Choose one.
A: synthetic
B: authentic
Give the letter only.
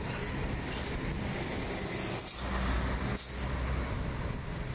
B